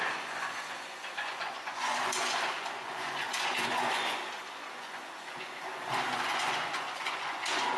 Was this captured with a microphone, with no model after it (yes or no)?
no